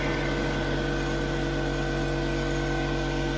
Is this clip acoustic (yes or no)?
yes